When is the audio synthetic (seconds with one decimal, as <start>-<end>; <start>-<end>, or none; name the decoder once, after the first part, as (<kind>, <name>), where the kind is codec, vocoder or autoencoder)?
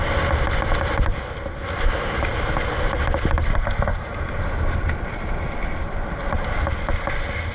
3.9-5.3 (vocoder, BigVGAN v2)